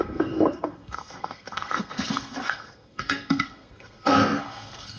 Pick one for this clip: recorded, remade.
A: remade